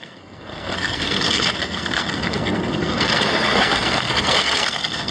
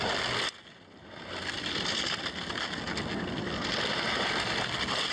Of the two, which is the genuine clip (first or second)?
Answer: second